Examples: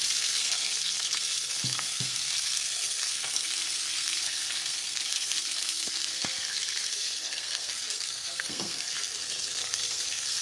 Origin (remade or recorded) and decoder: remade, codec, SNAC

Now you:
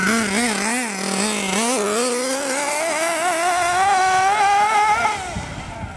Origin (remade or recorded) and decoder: recorded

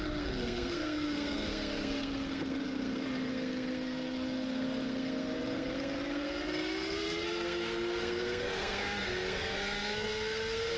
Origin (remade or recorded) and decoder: remade, codec, SNAC